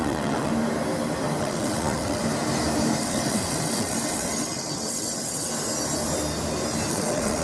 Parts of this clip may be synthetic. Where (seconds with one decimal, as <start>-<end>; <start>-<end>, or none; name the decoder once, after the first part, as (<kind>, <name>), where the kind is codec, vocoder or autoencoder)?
0.0-0.5 (vocoder, WaveNeXt); 1.4-2.2; 3.0-5.5; 6.9-7.4